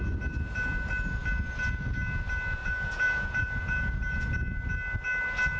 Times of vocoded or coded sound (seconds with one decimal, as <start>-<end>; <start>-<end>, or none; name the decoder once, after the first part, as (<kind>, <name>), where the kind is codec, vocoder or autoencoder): 2.6-4.3 (vocoder, Vocos)